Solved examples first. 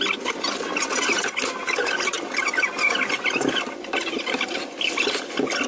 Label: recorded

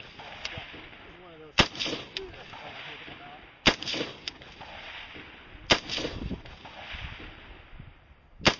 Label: recorded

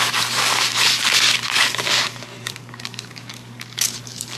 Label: remade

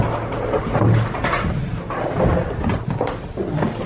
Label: recorded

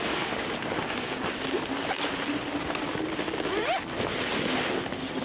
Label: recorded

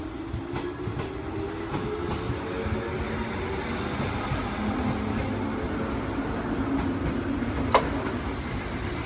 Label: recorded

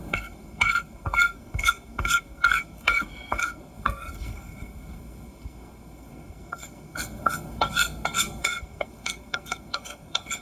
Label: remade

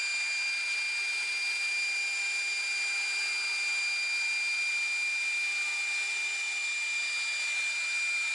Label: recorded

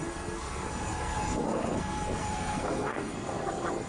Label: remade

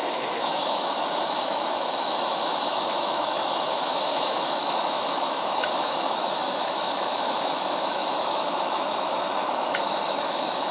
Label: remade